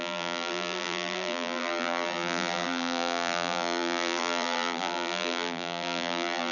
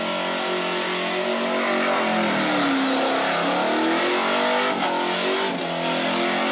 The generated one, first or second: first